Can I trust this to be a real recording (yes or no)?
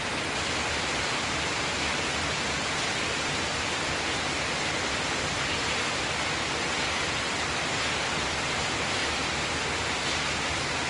yes